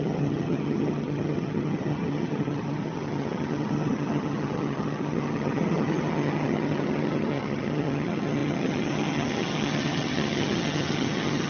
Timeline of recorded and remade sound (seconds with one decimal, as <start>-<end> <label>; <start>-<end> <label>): 0.0-11.5 remade